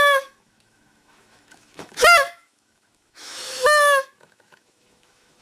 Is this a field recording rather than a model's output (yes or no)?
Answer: no